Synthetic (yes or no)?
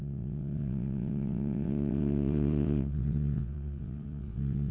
yes